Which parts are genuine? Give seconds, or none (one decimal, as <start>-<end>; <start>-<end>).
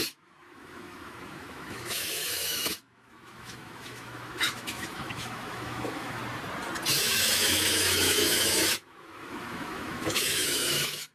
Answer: 6.2-6.9